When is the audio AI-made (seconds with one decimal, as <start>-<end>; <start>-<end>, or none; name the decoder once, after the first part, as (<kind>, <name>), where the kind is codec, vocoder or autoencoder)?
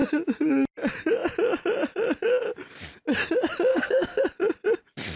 3.7-4.2 (codec, SNAC)